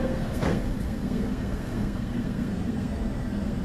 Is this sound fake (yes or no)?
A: yes